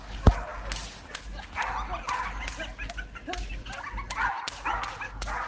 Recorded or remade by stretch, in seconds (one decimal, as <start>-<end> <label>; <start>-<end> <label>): 0.0-5.5 recorded